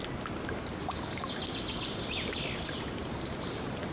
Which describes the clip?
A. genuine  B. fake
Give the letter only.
A